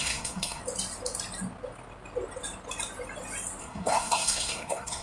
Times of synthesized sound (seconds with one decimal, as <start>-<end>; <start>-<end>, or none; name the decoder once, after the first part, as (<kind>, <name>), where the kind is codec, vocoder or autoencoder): 0.0-0.6 (codec, SNAC); 3.6-5.0